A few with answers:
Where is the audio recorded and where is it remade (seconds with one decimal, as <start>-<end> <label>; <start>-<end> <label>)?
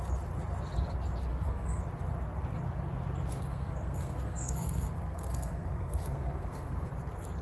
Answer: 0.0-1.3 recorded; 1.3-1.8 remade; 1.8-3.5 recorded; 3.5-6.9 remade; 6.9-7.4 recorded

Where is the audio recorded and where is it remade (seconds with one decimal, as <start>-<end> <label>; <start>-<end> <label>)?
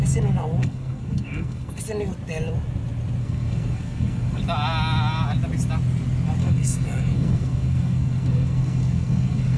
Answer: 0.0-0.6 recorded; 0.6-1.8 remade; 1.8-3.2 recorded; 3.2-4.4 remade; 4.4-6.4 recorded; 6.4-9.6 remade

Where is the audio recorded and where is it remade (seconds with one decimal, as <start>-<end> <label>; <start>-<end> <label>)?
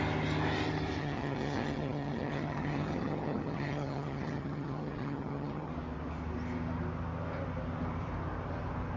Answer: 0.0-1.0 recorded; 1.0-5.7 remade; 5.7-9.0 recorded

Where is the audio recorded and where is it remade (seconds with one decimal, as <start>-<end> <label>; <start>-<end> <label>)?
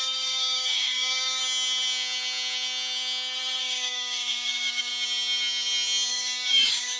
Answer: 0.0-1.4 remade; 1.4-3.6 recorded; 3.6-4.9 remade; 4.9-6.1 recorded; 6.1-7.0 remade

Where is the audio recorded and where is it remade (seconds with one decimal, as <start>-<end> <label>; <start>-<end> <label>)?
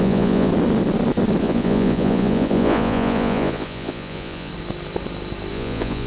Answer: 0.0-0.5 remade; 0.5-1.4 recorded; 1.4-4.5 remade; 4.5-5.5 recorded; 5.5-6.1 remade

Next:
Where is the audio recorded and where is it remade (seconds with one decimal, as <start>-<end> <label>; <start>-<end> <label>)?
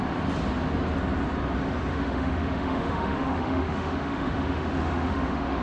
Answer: 0.0-1.9 recorded; 1.9-5.6 remade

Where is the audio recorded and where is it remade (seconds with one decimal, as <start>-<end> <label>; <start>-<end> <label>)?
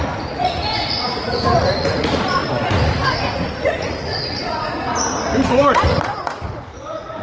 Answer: 0.0-7.2 remade